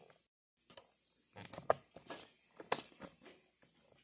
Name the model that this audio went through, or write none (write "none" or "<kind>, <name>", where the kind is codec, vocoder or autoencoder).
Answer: none